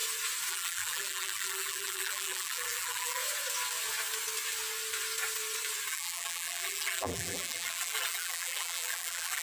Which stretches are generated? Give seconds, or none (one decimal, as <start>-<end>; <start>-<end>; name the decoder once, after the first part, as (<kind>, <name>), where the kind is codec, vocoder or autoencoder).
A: 0.5-3.2 (vocoder, BigVGAN v2); 5.9-9.4